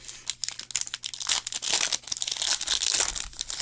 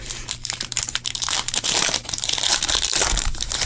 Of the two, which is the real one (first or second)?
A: first